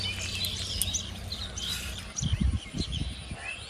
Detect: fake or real real